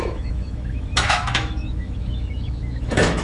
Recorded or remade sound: remade